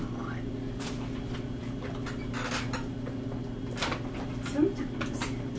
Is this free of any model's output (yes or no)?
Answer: yes